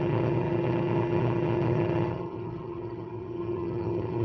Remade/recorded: remade